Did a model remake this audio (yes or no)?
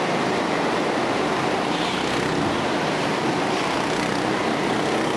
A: no